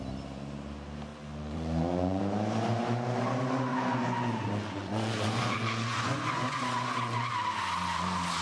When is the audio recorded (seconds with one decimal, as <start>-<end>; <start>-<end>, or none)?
0.0-1.1; 2.2-3.7; 7.3-8.4